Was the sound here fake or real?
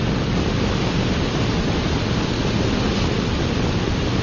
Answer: real